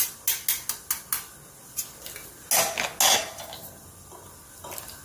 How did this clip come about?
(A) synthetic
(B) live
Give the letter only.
B